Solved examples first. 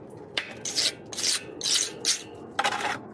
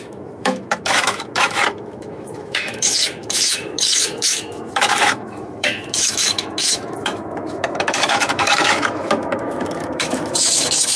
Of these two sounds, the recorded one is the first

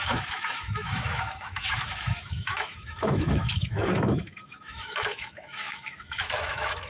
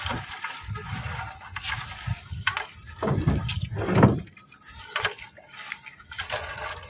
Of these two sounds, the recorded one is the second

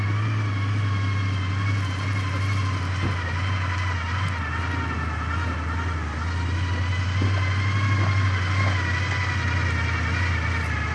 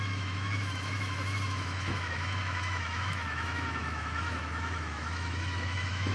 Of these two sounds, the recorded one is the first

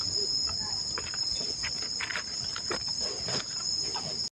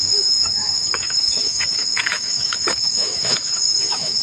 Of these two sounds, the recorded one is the first